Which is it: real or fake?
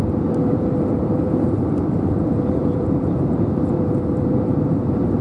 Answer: fake